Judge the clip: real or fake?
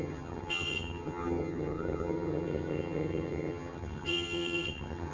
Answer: fake